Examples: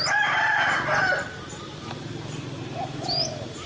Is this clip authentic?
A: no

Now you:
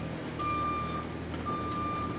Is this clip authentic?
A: yes